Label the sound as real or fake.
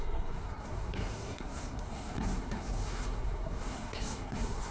fake